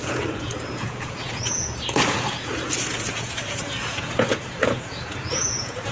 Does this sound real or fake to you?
fake